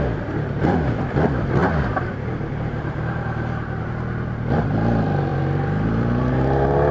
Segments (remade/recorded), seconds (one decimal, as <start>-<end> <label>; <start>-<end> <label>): 0.0-5.3 recorded; 5.3-6.3 remade; 6.3-6.9 recorded